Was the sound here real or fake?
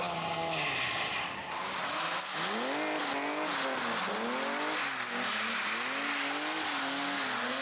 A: real